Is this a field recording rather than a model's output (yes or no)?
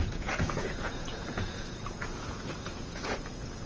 no